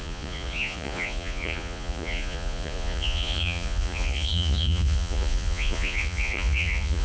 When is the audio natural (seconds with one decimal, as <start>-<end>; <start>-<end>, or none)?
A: none